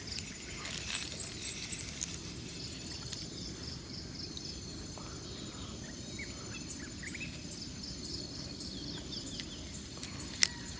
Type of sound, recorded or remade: recorded